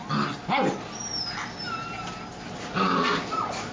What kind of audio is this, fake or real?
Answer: real